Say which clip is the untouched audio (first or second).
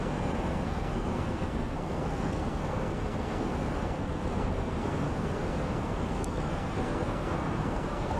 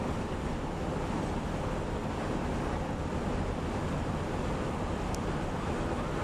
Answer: second